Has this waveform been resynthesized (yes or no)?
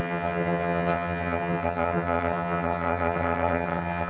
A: yes